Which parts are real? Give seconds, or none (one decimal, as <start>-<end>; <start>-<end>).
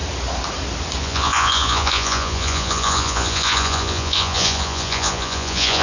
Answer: 0.0-1.0